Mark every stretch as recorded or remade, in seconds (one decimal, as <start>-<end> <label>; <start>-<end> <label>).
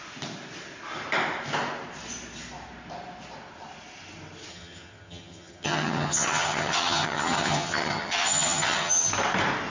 0.0-4.5 recorded; 4.5-9.1 remade; 9.1-9.7 recorded